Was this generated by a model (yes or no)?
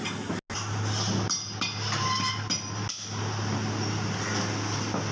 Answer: no